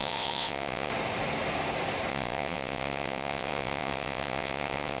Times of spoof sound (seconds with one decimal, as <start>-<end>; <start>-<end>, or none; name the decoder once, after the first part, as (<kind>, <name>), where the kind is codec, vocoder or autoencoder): 0.0-0.9 (vocoder, WaveNeXt); 2.1-5.0